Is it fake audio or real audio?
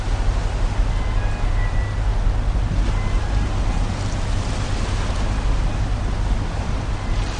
real